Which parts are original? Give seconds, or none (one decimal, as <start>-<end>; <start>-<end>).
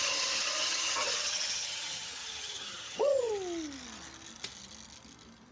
3.3-5.5